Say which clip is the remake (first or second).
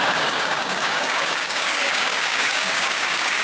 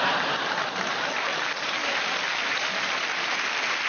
first